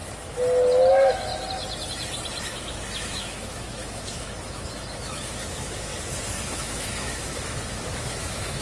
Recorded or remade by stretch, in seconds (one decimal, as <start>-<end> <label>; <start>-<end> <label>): 0.0-0.9 recorded; 0.9-1.3 remade; 1.3-2.4 recorded; 2.4-5.9 remade; 5.9-6.4 recorded; 6.4-8.6 remade